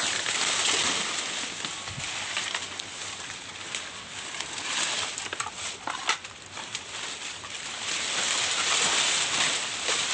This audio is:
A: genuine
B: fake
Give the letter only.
A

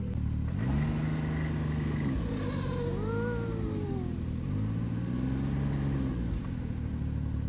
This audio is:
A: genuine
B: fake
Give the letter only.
A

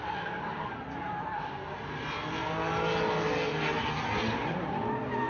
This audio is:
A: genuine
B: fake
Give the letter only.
A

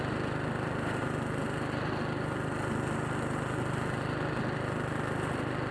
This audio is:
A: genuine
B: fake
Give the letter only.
A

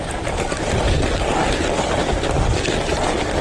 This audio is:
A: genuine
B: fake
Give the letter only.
A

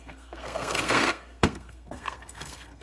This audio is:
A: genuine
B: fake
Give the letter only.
B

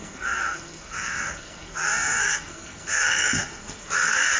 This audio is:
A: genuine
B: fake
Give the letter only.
B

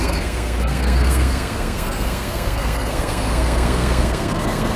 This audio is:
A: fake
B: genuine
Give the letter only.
A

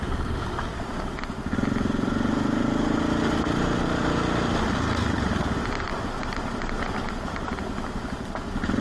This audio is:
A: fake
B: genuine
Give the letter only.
B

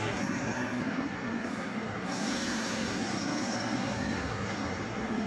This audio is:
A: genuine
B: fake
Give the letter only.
B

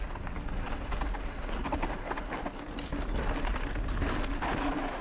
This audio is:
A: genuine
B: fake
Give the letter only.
A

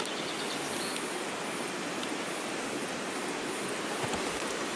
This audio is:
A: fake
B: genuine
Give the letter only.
B